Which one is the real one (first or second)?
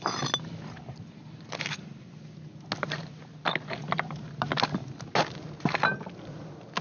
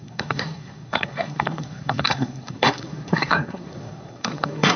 first